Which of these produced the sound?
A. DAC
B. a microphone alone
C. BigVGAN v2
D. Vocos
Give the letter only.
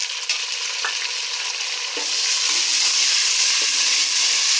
B